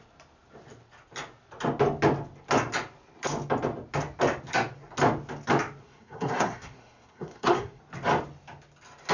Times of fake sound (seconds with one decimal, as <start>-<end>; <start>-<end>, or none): 5.8-7.8